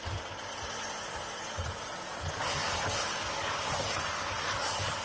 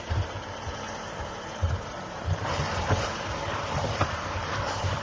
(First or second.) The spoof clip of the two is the second